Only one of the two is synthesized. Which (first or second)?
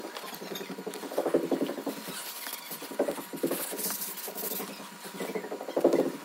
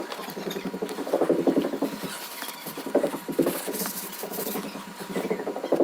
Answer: second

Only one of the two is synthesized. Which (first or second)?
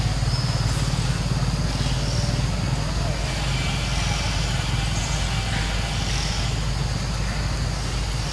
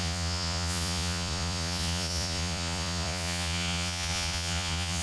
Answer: second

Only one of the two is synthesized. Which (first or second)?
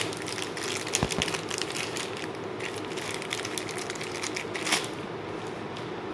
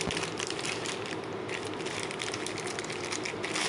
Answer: second